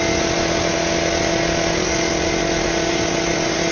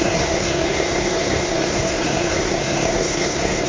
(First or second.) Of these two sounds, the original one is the first